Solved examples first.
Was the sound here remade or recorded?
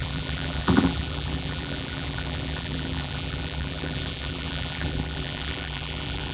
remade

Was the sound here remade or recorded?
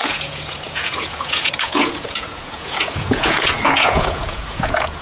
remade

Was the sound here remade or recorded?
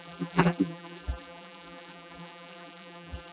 remade